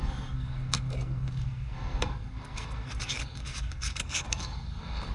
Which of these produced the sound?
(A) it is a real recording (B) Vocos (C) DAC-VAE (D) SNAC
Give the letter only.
D